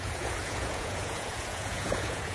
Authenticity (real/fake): fake